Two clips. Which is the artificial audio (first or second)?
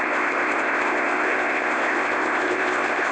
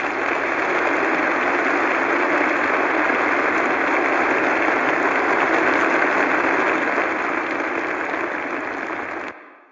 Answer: first